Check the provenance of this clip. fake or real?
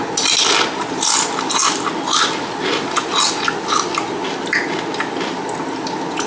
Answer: real